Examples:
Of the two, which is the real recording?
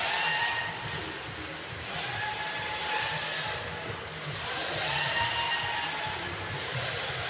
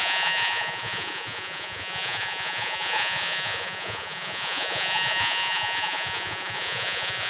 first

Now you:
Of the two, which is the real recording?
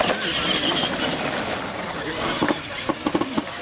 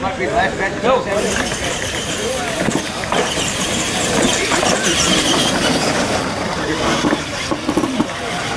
first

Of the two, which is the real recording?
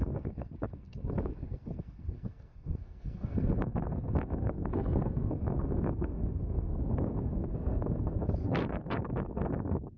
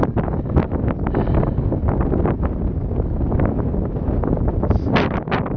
second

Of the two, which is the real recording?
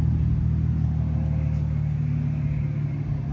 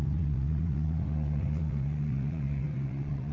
first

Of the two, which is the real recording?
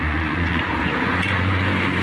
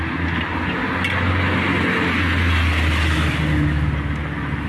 second